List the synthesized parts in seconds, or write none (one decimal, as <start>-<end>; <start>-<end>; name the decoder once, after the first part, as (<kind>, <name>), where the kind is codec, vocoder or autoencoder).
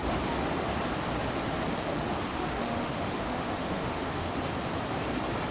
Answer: 2.3-4.4 (autoencoder, DAC-VAE)